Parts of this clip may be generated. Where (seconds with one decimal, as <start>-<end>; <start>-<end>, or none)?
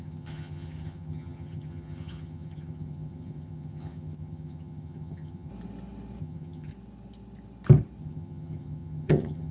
0.0-5.5; 6.2-6.7; 8.0-9.5